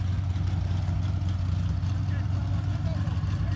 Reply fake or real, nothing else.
real